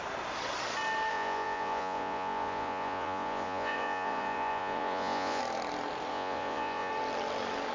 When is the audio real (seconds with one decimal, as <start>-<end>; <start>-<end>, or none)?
0.0-1.1; 5.4-6.1; 6.9-7.7